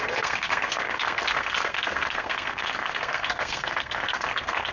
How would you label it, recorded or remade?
remade